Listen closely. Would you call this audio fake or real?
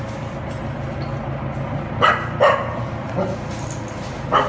real